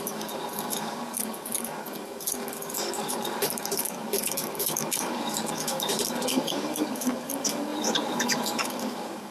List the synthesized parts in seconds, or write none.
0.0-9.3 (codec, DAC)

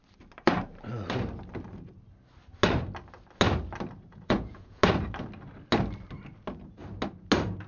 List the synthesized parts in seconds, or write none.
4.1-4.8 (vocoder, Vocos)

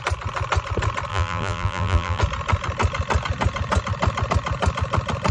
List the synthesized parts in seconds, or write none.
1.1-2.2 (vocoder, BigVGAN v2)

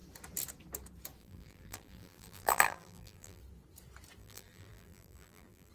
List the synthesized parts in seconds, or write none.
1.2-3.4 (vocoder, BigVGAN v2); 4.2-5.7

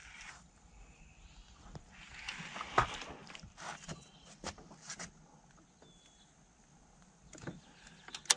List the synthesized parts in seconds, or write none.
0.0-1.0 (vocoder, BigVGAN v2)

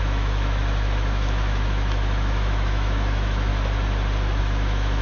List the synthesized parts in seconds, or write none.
0.0-3.5 (autoencoder, DAC-VAE); 4.4-5.0

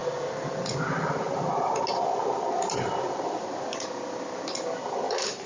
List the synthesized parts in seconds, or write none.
none

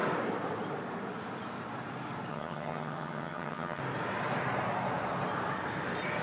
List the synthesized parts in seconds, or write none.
2.3-3.8 (vocoder, HiFi-GAN)